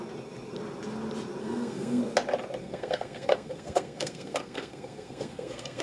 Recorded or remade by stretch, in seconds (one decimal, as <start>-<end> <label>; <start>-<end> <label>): 0.0-1.4 recorded; 1.4-2.0 remade; 2.0-2.6 recorded; 2.6-5.8 remade